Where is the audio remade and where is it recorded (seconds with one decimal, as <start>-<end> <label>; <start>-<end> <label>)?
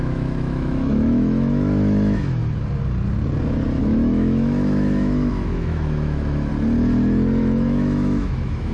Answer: 0.0-2.4 remade; 2.4-3.8 recorded; 3.8-6.5 remade; 6.5-7.4 recorded; 7.4-8.7 remade